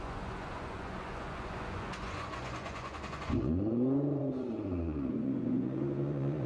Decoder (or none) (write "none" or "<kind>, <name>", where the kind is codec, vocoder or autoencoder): vocoder, Vocos